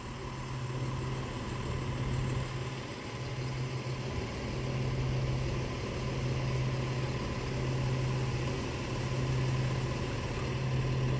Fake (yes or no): no